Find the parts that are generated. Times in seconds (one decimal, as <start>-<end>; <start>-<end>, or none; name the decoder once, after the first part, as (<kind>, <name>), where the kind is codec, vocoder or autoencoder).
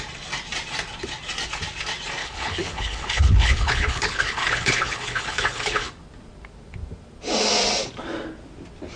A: 2.2-5.9 (codec, HILCodec)